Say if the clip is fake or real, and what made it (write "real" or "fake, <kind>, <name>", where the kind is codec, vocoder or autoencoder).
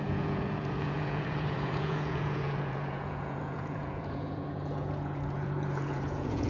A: fake, vocoder, Vocos